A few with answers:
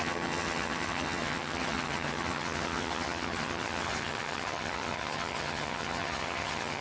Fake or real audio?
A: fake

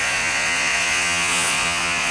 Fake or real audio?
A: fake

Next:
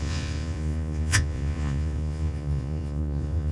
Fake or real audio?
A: fake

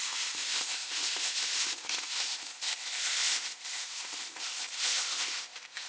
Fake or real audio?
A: fake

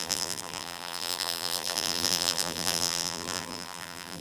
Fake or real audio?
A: fake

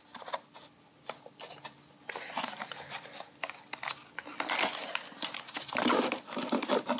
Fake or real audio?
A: real